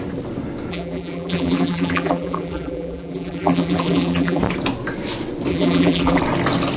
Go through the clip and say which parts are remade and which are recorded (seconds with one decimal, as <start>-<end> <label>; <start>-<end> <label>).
0.0-0.7 recorded; 0.7-4.4 remade; 4.4-5.5 recorded; 5.5-6.2 remade; 6.2-6.8 recorded